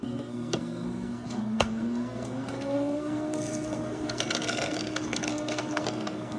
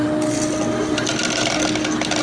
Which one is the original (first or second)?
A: second